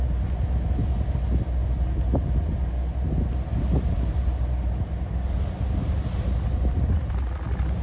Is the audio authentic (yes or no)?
yes